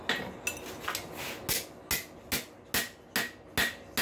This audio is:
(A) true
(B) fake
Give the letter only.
A